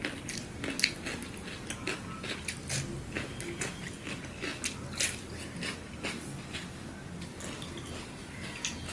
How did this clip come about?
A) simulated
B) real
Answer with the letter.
B